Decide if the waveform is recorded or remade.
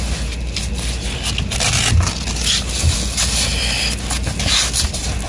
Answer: recorded